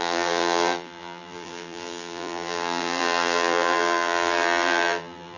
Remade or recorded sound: remade